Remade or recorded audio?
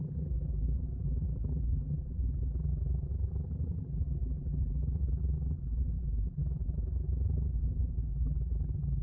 remade